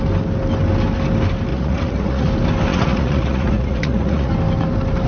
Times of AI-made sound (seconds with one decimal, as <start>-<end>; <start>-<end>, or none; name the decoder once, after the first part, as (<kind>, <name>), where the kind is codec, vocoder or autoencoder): 1.5-2.3 (vocoder, Vocos); 2.7-4.3